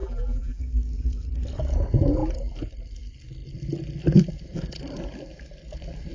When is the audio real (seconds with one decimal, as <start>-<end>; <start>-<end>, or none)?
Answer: 0.6-6.1